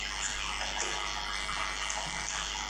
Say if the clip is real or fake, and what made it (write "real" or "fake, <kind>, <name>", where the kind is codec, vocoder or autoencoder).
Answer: real